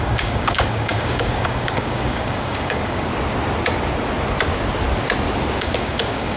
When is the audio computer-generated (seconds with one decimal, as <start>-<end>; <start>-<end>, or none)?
0.0-3.1; 5.6-6.4